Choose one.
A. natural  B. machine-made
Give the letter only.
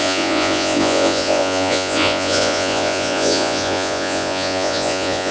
B